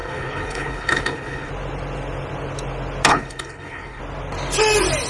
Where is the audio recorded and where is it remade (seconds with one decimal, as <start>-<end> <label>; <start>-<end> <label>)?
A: 0.0-1.5 remade; 1.5-3.1 recorded; 3.1-4.0 remade; 4.0-5.1 recorded